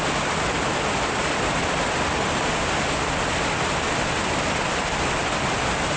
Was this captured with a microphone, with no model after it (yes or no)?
yes